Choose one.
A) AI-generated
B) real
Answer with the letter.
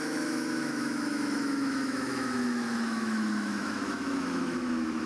A